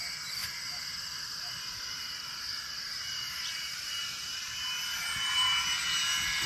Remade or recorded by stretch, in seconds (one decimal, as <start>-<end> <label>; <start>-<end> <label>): 0.0-0.4 recorded; 0.4-4.3 remade; 4.3-6.5 recorded